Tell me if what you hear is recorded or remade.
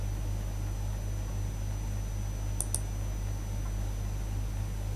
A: recorded